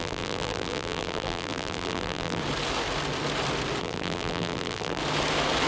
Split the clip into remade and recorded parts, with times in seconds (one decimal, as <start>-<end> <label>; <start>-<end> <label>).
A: 0.0-2.4 remade; 2.4-3.8 recorded; 3.8-5.0 remade; 5.0-5.7 recorded